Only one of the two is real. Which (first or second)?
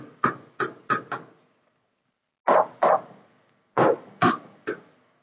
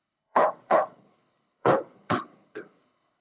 first